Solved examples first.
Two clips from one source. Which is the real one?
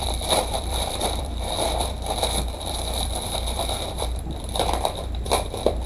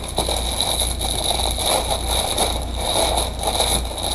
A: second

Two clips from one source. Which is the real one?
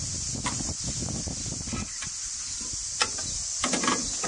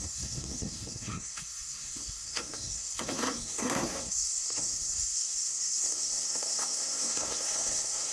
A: first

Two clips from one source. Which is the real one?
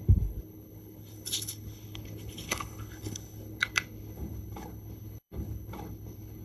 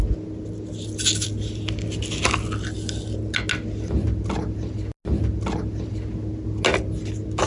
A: second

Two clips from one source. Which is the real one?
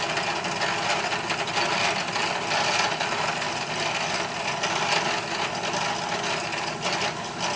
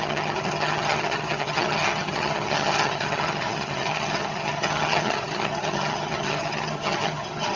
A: first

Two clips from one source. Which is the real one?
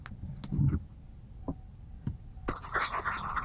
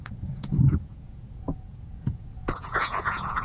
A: first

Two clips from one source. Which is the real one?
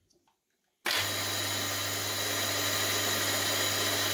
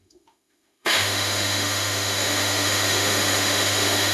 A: first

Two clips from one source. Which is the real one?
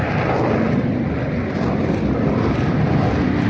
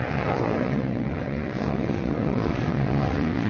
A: first